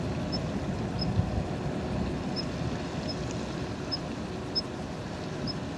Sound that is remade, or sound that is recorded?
recorded